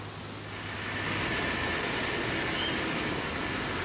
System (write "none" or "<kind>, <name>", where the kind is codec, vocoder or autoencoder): none